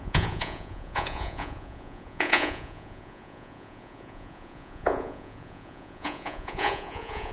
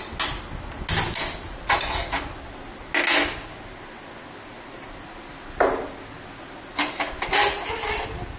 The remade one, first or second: first